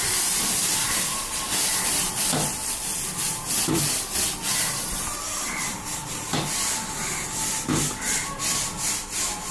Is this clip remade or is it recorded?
remade